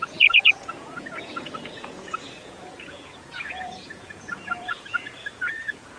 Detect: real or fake fake